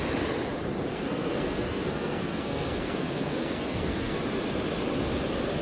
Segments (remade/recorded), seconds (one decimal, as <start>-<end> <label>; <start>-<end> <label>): 0.0-0.9 recorded; 0.9-4.2 remade; 4.2-5.6 recorded